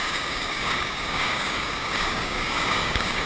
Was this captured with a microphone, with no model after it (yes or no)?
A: no